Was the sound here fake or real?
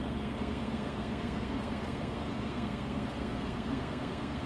fake